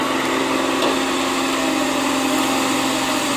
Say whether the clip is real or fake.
real